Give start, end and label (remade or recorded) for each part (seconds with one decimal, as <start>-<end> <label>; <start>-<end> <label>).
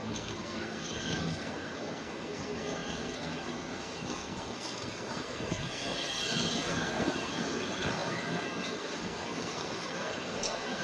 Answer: 0.0-10.8 remade